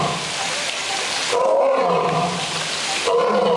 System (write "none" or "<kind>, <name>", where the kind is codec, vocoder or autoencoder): none